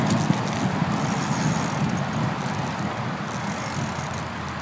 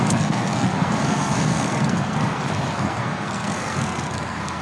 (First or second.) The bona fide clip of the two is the first